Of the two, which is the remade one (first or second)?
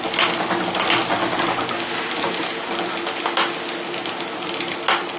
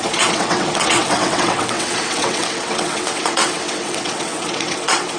second